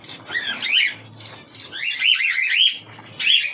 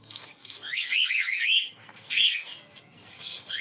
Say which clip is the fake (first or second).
second